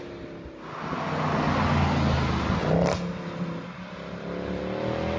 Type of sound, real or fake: real